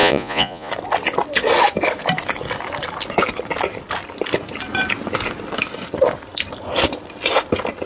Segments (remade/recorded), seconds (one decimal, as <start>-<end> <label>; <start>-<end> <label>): 0.0-0.7 remade; 0.7-7.9 recorded

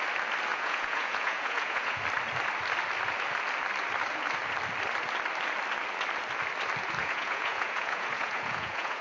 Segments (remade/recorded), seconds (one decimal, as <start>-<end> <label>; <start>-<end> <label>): 0.0-0.5 recorded; 0.5-2.0 remade; 2.0-7.0 recorded; 7.0-9.0 remade

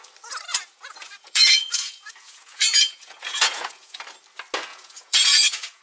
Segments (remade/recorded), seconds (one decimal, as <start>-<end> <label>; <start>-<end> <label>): 0.0-0.5 recorded; 0.5-4.0 remade; 4.0-4.7 recorded; 4.7-5.8 remade